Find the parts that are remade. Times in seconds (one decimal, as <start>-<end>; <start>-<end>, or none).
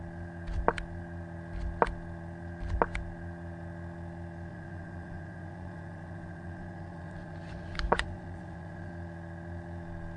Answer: 4.5-8.9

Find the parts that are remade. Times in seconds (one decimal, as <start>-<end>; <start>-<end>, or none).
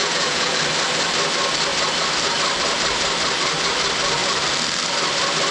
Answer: 0.0-0.5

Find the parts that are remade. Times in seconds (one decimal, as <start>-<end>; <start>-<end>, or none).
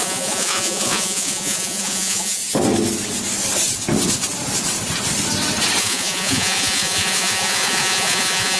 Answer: 0.0-2.4; 5.8-8.6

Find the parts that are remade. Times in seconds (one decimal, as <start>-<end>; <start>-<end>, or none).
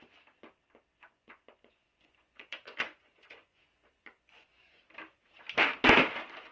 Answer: 0.9-4.8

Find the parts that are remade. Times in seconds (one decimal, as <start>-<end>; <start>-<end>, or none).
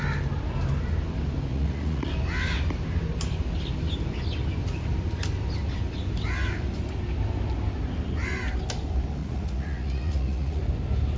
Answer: 1.5-2.1; 9.2-10.6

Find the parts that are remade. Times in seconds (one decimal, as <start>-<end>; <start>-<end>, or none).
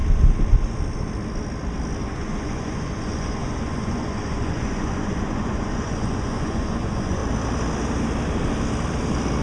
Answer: 2.0-7.2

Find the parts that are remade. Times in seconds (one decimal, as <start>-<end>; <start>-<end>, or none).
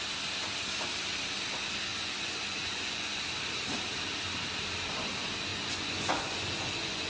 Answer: 1.9-3.2; 5.5-7.1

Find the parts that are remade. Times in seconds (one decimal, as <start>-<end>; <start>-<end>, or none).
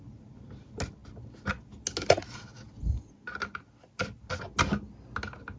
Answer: none